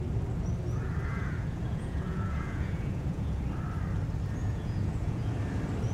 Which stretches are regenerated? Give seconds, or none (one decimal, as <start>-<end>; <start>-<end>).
1.1-3.4; 4.4-5.3

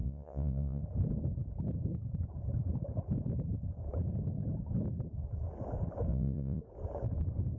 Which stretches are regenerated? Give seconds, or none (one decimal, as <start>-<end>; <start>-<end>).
0.0-0.8; 6.1-6.6

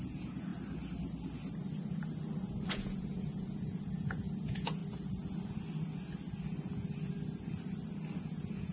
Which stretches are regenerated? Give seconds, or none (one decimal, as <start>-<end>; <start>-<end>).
0.0-0.5; 2.7-4.8; 8.2-8.7